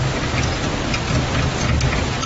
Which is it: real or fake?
real